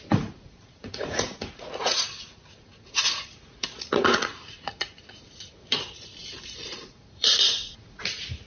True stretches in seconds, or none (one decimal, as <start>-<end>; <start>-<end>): none